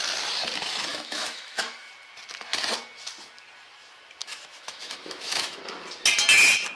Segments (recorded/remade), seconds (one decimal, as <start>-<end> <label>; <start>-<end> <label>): 0.0-0.9 recorded; 0.9-1.9 remade; 1.9-4.2 recorded; 4.2-5.6 remade; 5.6-6.8 recorded